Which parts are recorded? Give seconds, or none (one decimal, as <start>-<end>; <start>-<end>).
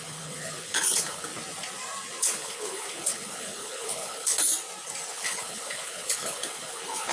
1.3-2.2; 4.5-5.1